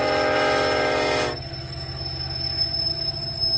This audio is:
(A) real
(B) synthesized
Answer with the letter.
A